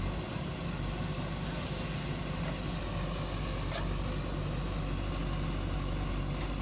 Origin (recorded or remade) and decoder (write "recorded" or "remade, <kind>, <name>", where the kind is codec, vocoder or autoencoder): recorded